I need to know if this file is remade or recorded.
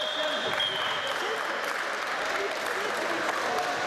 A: recorded